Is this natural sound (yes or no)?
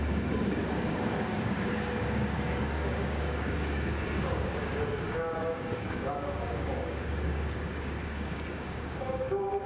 no